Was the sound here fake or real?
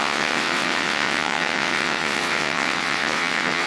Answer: fake